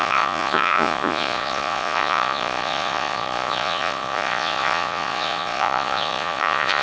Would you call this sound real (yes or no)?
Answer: no